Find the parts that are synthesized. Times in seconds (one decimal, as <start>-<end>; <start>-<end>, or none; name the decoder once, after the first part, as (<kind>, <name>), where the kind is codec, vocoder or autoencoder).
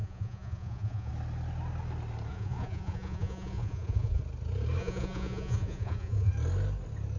0.0-1.1 (vocoder, Vocos); 2.3-4.2; 4.8-6.3